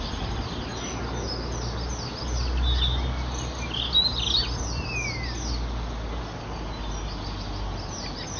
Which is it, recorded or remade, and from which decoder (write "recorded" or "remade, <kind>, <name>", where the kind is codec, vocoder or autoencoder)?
recorded